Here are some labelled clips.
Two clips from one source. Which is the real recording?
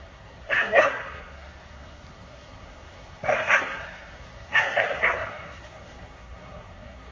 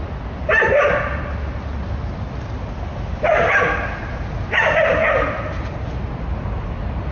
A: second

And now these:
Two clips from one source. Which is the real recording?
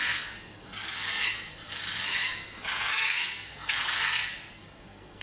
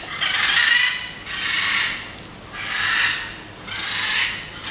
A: second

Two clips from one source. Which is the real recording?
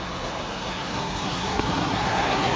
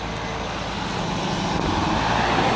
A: second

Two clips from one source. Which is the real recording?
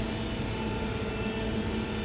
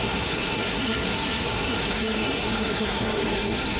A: first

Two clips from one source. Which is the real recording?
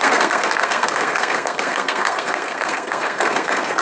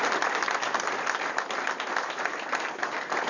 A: second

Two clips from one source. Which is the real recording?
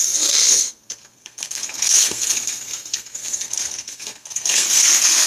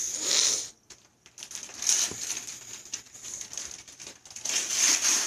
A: second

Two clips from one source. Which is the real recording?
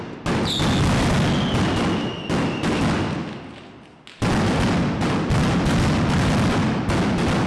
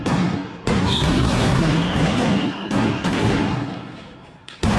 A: first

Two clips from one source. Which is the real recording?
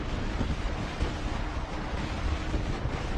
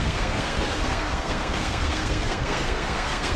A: first